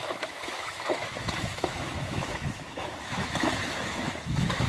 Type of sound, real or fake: fake